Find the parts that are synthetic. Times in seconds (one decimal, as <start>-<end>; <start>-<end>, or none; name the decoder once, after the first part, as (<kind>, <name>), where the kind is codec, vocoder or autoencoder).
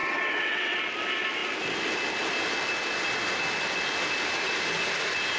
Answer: 0.0-0.8 (vocoder, WaveNeXt)